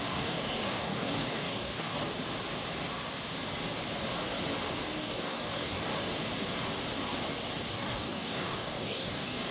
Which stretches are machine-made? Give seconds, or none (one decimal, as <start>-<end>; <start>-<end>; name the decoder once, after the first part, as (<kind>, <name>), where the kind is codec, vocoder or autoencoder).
0.0-2.0 (codec, DAC); 5.0-5.9; 7.7-9.5

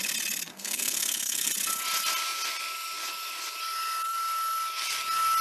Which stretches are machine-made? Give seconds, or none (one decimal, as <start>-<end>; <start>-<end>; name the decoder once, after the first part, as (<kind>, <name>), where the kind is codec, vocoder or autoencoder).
0.5-1.5 (codec, SNAC)